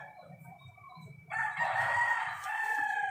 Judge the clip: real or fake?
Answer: fake